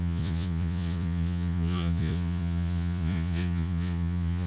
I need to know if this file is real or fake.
fake